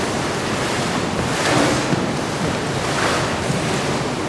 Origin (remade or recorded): remade